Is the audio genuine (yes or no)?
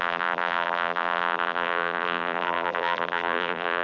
no